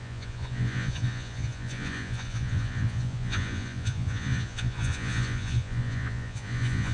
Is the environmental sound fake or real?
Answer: fake